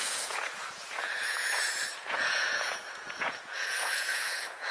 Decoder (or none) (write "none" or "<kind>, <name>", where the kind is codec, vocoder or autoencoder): vocoder, Vocos